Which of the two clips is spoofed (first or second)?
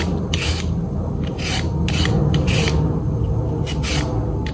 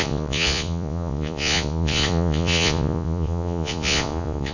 second